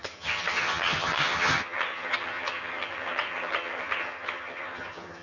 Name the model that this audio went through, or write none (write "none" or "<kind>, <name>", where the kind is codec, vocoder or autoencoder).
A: vocoder, HiFi-GAN